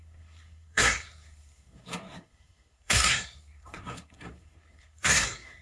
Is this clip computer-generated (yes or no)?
yes